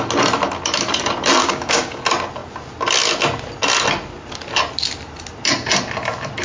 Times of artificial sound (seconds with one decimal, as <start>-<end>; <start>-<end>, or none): 1.4-2.0

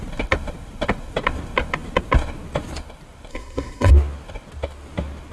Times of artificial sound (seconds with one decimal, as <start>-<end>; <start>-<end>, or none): 3.3-3.9

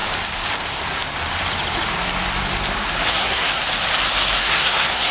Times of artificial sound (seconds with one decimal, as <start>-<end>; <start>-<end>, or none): 3.1-3.6; 4.4-5.1

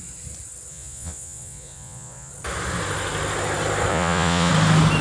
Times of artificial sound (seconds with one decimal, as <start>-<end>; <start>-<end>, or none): 0.7-2.3; 3.9-4.5

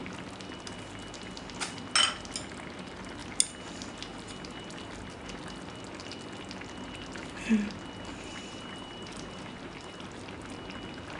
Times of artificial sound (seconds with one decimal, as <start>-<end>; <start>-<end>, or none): 8.1-10.2

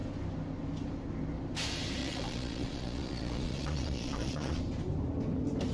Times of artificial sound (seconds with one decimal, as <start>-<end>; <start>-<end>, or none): 2.0-4.6

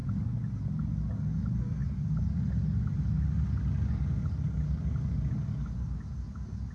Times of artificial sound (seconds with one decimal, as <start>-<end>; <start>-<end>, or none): none

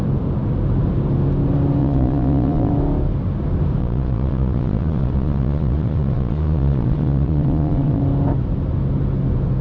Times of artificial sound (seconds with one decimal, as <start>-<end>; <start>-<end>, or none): 1.8-2.7; 3.8-8.0